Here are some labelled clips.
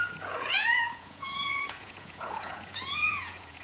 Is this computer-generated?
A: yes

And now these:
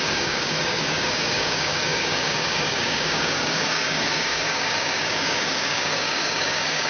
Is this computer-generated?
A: yes